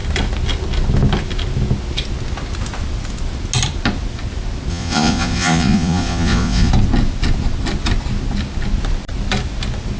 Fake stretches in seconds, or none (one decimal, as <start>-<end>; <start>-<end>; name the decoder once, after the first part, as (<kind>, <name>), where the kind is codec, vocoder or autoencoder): 4.7-6.7 (vocoder, Vocos)